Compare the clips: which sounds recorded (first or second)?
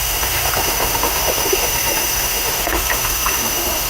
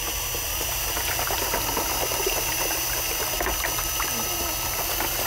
second